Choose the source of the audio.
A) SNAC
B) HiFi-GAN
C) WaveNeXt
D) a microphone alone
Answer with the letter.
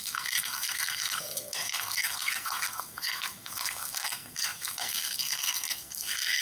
A